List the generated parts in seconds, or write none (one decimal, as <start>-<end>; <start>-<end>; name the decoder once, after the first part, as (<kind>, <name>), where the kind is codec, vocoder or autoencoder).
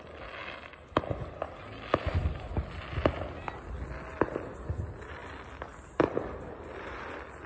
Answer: none